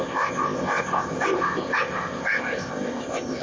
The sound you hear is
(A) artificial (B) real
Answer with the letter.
A